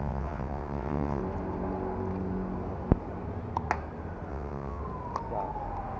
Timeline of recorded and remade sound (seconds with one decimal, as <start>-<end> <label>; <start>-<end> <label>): 0.0-1.2 remade; 1.2-4.3 recorded; 4.3-4.8 remade; 4.8-6.0 recorded